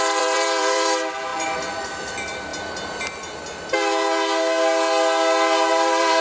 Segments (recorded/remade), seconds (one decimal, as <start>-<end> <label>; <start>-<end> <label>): 0.0-2.5 remade; 2.5-5.7 recorded; 5.7-6.2 remade